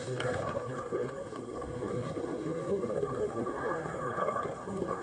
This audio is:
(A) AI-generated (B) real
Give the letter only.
A